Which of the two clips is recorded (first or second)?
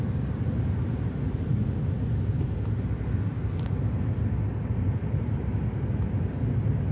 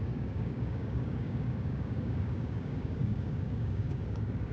first